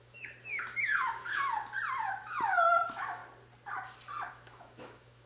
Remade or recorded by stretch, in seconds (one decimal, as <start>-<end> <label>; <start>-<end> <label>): 0.0-1.4 remade; 1.4-2.2 recorded; 2.2-3.2 remade; 3.2-4.3 recorded; 4.3-5.3 remade